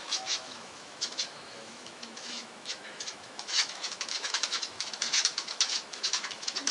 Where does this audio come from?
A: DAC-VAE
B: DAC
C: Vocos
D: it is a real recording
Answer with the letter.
A